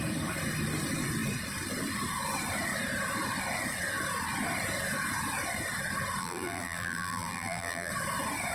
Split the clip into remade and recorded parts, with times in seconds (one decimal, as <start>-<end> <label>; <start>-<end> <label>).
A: 0.0-6.2 recorded; 6.2-7.9 remade; 7.9-8.5 recorded